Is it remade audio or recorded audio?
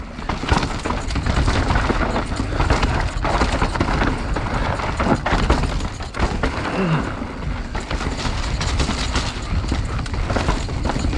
recorded